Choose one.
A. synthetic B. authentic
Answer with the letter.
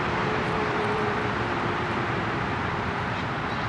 A